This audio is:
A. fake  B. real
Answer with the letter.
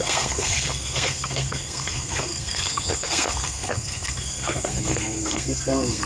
A